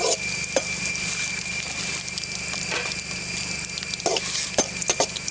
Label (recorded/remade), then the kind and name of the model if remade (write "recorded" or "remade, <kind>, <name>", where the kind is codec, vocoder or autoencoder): recorded